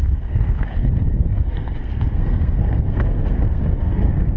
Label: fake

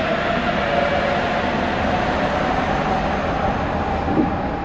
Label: real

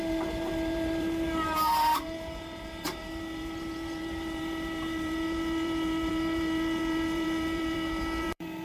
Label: fake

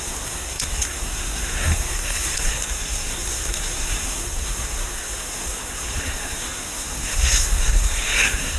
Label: fake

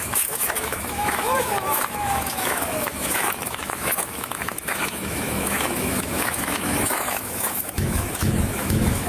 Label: fake